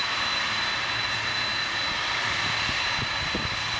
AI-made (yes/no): no